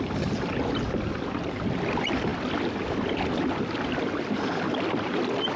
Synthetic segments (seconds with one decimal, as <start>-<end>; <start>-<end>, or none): none